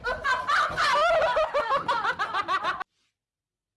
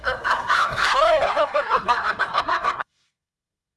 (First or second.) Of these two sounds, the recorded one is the first